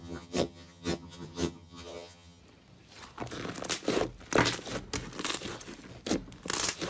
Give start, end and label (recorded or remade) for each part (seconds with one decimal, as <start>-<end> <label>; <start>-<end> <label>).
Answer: 0.0-2.4 remade; 2.4-6.9 recorded

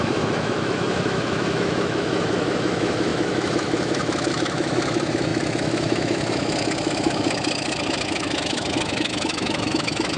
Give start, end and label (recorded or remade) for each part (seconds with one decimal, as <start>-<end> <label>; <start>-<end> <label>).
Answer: 0.0-10.2 remade

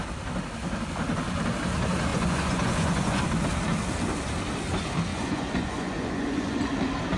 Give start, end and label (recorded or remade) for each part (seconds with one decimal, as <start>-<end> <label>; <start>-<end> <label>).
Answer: 0.0-2.1 recorded; 2.1-3.2 remade; 3.2-5.1 recorded; 5.1-6.7 remade; 6.7-7.2 recorded

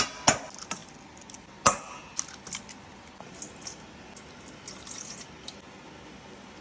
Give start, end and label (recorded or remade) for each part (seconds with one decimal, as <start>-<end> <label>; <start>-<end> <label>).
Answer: 0.0-6.6 recorded

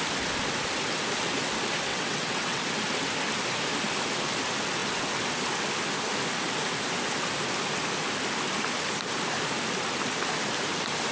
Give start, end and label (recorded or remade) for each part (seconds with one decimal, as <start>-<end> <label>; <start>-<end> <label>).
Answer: 0.0-1.9 recorded; 1.9-2.6 remade; 2.6-11.1 recorded